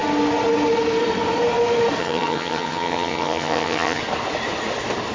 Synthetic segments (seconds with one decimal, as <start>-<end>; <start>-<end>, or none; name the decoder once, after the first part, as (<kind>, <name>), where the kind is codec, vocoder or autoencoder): 2.0-4.0 (vocoder, HiFi-GAN)

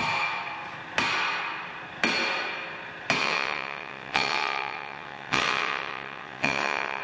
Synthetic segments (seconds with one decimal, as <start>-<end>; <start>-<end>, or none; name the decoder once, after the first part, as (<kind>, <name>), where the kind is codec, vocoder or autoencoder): 3.2-7.0 (vocoder, WaveNeXt)

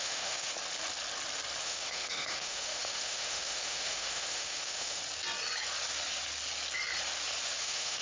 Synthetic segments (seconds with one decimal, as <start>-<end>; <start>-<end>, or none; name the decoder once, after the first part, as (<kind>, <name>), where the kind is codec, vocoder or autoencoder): 0.0-0.5 (autoencoder, DAC-VAE); 1.6-5.0; 7.6-8.0

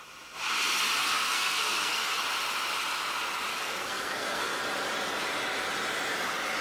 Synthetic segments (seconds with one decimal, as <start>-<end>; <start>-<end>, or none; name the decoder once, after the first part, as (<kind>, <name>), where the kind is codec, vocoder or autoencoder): 1.0-2.2 (codec, SNAC); 3.5-4.6

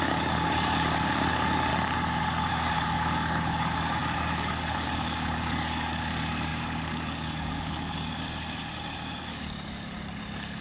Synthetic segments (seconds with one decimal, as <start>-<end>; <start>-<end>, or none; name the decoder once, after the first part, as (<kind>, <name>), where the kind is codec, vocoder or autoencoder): 0.0-1.7 (codec, DAC); 2.5-10.6

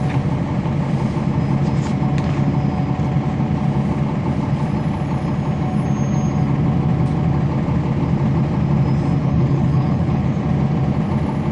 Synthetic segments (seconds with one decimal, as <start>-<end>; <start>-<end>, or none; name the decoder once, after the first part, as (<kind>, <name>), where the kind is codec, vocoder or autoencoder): 9.2-10.4 (codec, HILCodec)